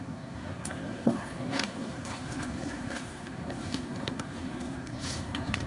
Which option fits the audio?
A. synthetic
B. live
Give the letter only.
A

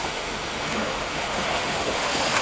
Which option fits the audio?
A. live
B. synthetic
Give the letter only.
B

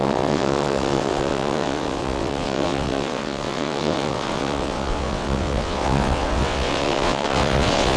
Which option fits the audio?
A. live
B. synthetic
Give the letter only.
B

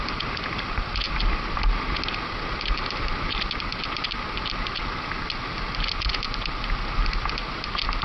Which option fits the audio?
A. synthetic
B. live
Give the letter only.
B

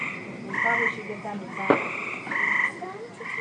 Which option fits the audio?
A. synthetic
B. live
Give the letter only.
B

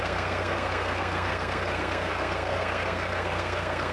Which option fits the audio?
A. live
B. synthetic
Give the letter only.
B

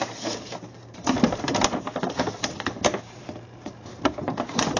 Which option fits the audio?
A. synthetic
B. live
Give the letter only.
A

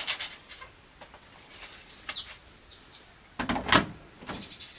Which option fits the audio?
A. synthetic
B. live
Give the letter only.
B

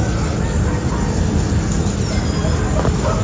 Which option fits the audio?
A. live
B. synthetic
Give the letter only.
A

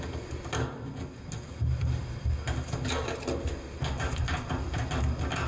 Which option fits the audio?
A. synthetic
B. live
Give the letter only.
B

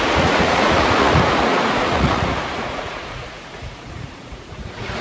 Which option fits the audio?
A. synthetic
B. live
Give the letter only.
A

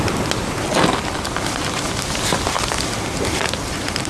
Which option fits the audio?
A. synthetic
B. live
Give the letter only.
B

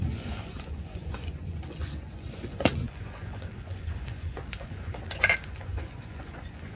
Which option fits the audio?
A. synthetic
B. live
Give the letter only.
A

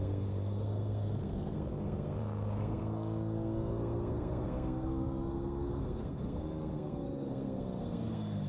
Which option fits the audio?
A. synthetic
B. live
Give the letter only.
A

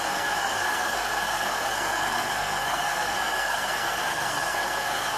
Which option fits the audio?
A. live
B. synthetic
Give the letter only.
B